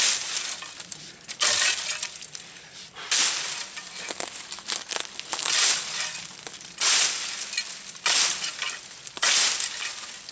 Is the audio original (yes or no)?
yes